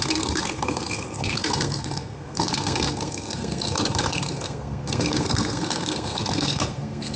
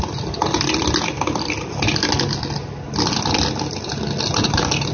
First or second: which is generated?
first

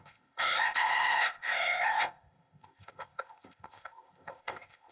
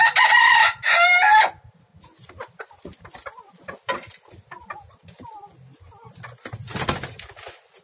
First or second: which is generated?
first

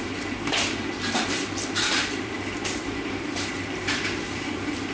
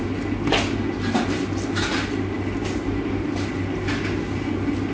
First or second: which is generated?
first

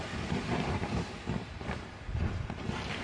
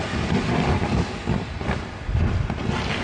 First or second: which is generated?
first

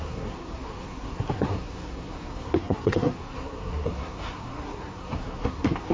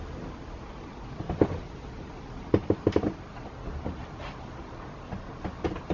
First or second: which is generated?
first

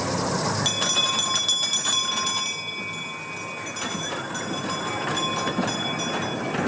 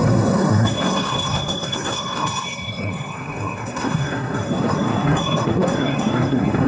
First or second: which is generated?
second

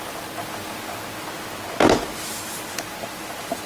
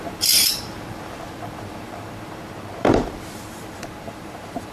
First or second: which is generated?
second